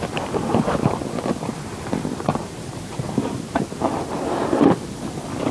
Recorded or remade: remade